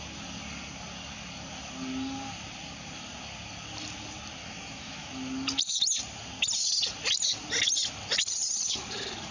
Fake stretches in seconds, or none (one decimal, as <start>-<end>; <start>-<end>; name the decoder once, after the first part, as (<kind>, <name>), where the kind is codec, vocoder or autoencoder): 4.4-5.1 (autoencoder, DAC-VAE)